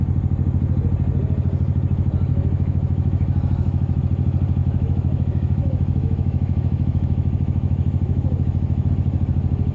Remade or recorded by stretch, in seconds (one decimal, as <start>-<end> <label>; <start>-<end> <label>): 0.0-2.3 recorded; 2.3-4.0 remade; 4.0-4.6 recorded; 4.6-8.9 remade; 8.9-9.7 recorded